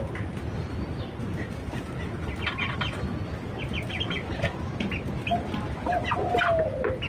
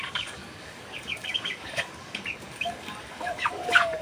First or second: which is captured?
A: first